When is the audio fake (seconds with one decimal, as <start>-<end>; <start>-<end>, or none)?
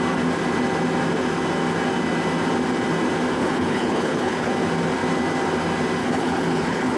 3.4-4.5; 6.0-7.0